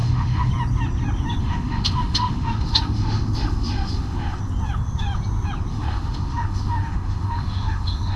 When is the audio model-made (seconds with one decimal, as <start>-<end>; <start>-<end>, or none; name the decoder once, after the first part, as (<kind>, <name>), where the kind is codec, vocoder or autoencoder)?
0.0-0.5 (autoencoder, DAC-VAE); 1.4-4.4; 5.7-8.2